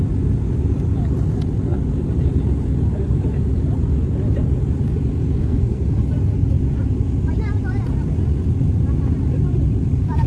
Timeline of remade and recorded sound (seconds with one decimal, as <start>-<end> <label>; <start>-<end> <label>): 0.0-5.4 recorded; 5.4-6.0 remade; 6.0-10.3 recorded